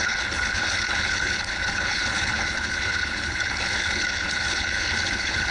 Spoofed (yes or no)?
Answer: yes